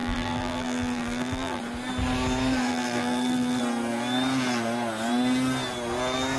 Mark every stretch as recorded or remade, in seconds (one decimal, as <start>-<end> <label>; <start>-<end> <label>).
0.0-1.6 remade; 1.6-2.7 recorded; 2.7-3.6 remade; 3.6-6.4 recorded